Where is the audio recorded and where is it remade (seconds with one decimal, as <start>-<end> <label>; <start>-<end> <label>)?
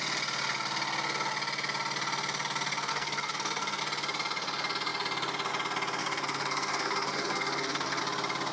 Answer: 0.0-2.9 recorded; 2.9-3.8 remade; 3.8-6.0 recorded; 6.0-8.0 remade; 8.0-8.5 recorded